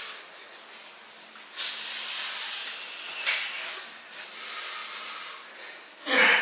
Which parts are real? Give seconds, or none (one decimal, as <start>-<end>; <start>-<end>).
0.0-6.4